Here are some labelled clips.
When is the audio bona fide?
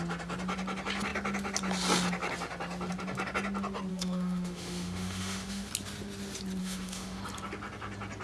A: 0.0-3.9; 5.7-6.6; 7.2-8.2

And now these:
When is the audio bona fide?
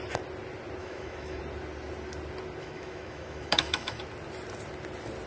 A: 0.0-0.8; 1.4-2.6; 4.0-5.3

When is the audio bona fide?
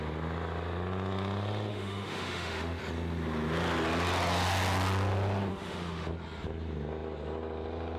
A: 0.0-1.7; 2.8-5.5; 6.1-8.0